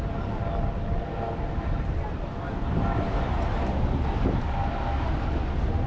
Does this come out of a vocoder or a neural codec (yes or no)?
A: no